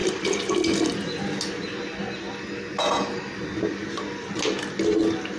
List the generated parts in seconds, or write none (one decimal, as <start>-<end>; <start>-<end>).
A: none